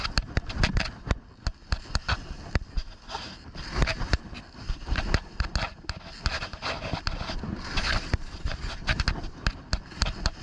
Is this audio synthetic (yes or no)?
no